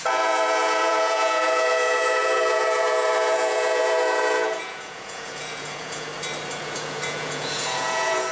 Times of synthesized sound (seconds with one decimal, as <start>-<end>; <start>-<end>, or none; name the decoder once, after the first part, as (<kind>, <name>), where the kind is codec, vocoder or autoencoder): 0.0-6.1 (vocoder, Vocos); 6.6-8.3